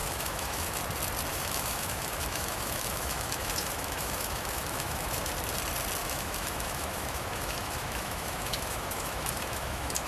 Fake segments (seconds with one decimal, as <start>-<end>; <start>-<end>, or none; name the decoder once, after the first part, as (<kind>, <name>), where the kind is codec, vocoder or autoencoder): 0.0-0.8 (autoencoder, DAC-VAE); 1.3-5.3; 6.0-10.1